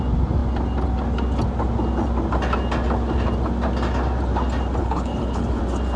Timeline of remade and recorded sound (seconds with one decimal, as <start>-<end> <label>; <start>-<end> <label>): 0.0-4.8 recorded; 4.8-5.6 remade; 5.6-6.0 recorded